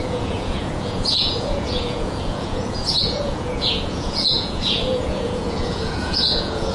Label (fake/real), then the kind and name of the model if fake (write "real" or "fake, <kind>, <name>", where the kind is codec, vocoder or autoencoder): fake, vocoder, Vocos